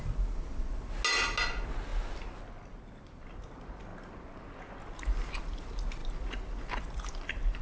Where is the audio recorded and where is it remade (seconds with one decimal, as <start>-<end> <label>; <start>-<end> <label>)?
0.0-7.6 recorded